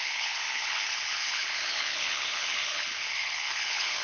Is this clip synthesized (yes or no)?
yes